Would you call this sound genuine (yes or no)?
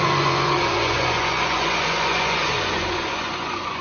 no